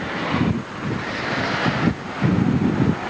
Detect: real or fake real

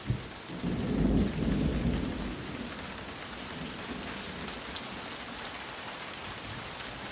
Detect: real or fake real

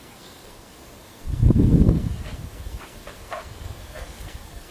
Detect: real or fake fake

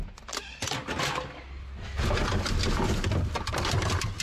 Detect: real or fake real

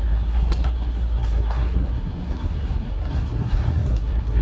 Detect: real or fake fake